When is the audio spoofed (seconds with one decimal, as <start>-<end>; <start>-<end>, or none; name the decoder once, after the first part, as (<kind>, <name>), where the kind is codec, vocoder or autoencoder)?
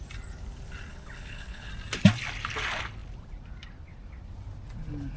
0.9-1.7 (codec, HILCodec)